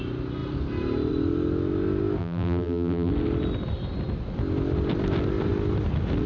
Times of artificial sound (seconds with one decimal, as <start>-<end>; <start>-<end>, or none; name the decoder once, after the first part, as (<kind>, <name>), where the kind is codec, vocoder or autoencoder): 2.2-3.1 (vocoder, BigVGAN v2)